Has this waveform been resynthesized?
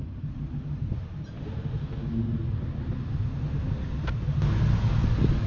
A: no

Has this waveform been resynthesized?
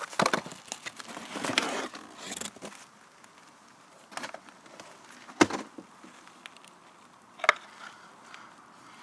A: no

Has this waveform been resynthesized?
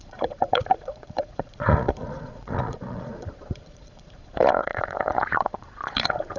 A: yes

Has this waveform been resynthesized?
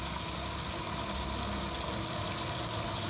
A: no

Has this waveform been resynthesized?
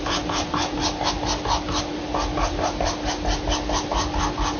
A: no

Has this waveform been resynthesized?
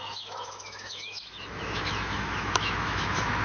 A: yes